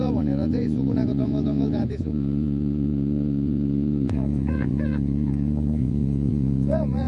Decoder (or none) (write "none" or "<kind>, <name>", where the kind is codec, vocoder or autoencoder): vocoder, Vocos